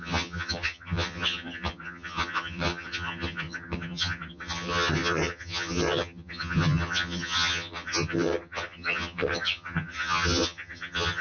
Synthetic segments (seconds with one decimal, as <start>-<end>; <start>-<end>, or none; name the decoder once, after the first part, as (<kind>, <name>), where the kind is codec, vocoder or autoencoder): 0.0-11.2 (vocoder, HiFi-GAN)